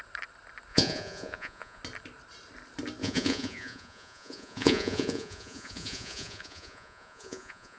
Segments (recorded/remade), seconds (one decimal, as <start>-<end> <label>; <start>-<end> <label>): 0.0-0.7 recorded; 0.7-1.8 remade; 1.8-3.0 recorded; 3.0-7.8 remade